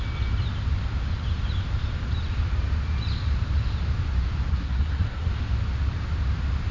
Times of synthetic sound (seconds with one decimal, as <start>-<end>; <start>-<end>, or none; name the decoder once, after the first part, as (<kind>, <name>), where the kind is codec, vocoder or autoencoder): 4.5-5.3 (codec, SNAC)